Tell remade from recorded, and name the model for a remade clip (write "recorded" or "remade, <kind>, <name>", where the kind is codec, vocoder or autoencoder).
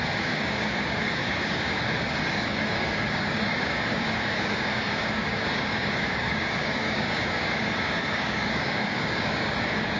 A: remade, codec, DAC